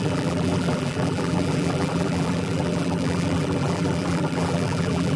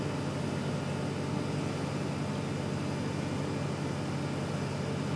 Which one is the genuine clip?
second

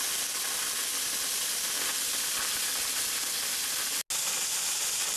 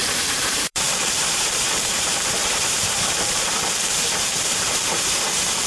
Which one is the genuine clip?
first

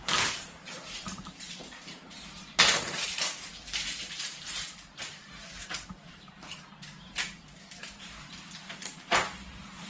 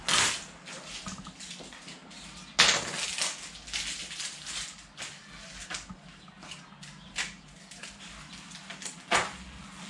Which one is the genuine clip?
second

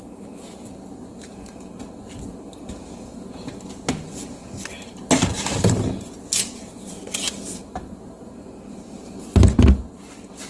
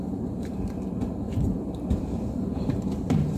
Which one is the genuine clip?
first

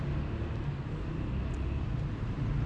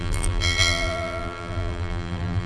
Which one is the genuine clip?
first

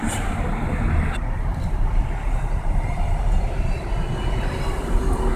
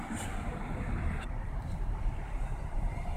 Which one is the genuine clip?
first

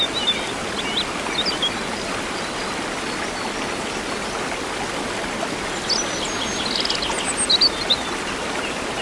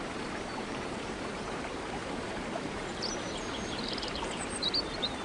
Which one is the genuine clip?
first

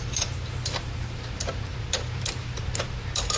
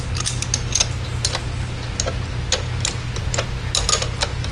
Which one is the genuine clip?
second